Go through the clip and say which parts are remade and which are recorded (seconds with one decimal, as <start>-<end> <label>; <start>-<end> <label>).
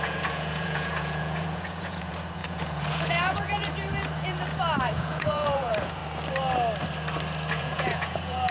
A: 0.0-3.6 remade; 3.6-4.9 recorded; 4.9-6.0 remade; 6.0-7.5 recorded; 7.5-8.5 remade